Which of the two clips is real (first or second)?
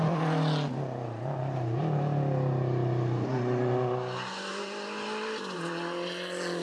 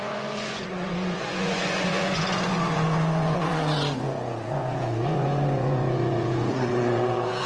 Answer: first